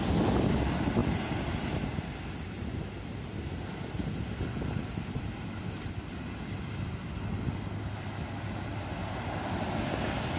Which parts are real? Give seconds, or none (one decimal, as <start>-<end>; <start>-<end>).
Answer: 0.0-10.4